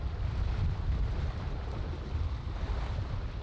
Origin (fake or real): real